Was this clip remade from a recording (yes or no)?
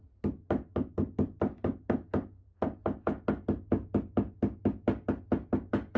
no